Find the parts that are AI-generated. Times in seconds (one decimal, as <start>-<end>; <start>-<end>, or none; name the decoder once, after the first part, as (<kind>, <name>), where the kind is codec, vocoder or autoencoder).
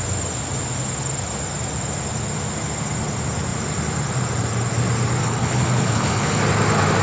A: 5.2-6.4 (codec, HILCodec)